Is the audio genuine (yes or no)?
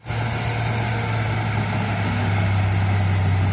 yes